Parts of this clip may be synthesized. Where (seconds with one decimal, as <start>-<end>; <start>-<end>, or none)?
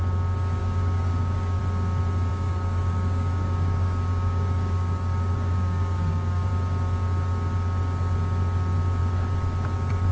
0.6-1.6; 2.3-6.5